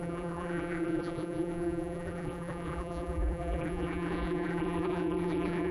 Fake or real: fake